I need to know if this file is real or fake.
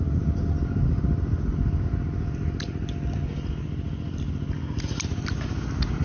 real